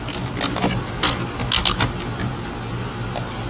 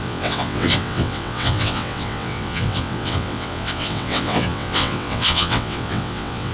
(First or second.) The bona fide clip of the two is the first